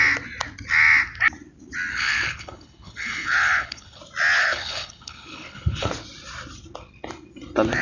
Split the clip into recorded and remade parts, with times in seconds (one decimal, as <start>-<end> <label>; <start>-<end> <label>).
0.0-1.9 recorded; 1.9-4.0 remade; 4.0-4.4 recorded; 4.4-5.9 remade; 5.9-7.8 recorded